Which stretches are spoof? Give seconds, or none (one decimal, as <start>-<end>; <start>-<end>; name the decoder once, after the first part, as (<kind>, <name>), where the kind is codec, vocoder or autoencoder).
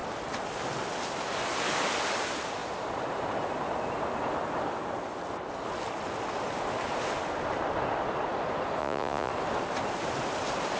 8.8-9.3 (vocoder, Vocos)